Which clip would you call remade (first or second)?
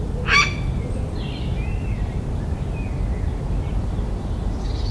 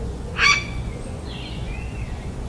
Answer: second